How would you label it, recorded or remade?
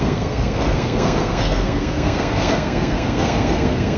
remade